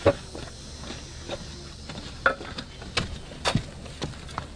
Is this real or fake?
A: real